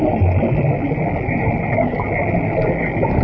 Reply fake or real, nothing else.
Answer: real